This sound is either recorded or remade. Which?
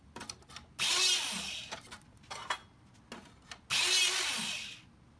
recorded